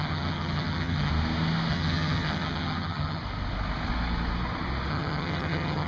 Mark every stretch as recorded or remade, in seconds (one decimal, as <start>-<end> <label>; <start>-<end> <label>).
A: 0.0-1.1 remade; 1.1-1.7 recorded; 1.7-3.2 remade; 3.2-4.9 recorded; 4.9-5.9 remade